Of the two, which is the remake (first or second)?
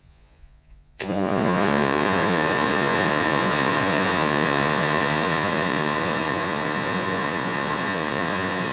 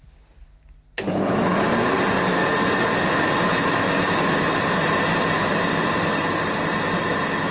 first